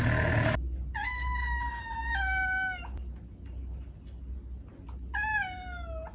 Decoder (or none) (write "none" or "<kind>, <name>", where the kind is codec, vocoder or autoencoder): none